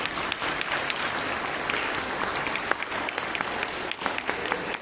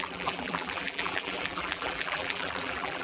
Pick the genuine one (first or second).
first